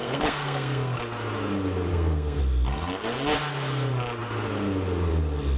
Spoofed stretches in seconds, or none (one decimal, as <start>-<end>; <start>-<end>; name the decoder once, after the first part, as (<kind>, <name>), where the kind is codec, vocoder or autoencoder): 0.0-1.0 (codec, SNAC); 1.9-2.4